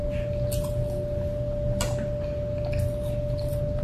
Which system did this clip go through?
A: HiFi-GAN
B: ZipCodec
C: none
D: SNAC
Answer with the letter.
C